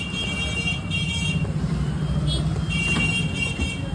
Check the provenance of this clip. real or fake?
real